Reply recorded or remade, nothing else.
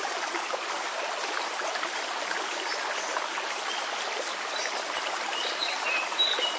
recorded